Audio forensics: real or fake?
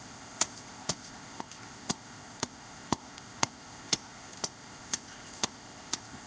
fake